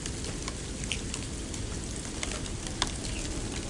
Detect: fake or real real